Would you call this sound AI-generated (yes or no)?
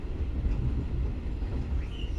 no